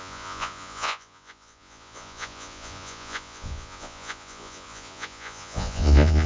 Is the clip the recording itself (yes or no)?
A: no